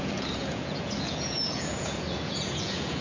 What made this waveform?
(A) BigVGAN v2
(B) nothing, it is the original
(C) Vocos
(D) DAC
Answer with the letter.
C